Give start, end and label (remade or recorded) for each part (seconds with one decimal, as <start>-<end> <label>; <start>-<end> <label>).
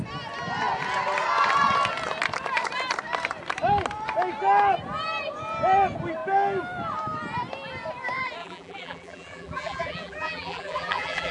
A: 0.0-8.4 recorded; 8.4-11.3 remade